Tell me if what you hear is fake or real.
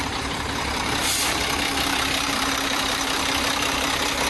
fake